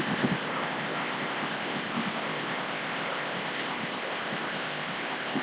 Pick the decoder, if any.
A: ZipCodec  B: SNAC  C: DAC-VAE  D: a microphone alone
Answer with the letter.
A